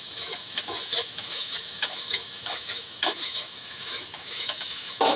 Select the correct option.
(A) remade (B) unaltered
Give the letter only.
A